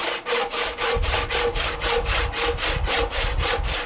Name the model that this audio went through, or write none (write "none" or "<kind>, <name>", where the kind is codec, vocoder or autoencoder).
none